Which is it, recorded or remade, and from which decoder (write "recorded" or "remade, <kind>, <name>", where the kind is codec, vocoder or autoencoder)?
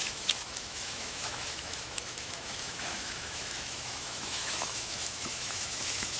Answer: remade, autoencoder, DAC-VAE